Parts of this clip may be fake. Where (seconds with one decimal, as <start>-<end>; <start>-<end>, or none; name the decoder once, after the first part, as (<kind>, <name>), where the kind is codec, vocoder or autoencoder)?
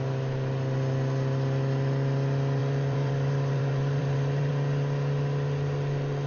2.6-4.5 (vocoder, BigVGAN v2)